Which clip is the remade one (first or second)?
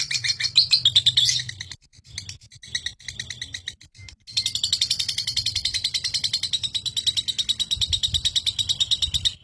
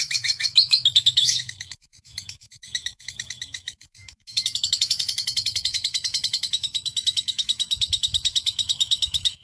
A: second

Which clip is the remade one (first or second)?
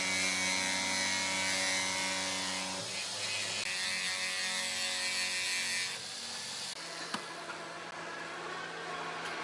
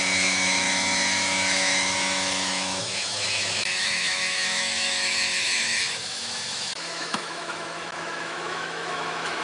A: second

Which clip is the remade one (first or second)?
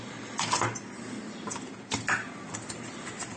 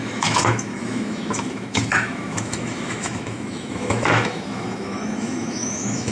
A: second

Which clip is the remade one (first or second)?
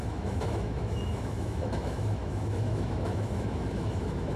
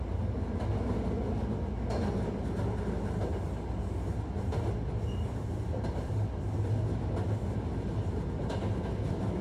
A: first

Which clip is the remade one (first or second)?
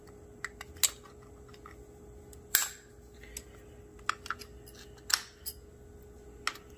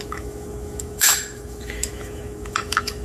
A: second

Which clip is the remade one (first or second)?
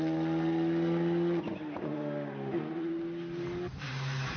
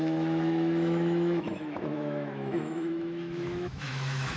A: second